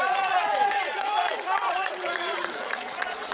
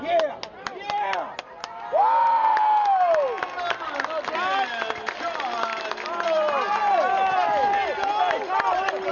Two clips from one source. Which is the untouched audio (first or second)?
second